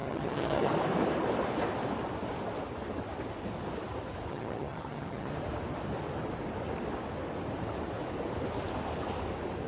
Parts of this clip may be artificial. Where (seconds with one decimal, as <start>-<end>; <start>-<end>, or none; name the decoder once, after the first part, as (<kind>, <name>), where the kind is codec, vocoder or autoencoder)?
0.0-0.7 (vocoder, HiFi-GAN); 4.3-5.3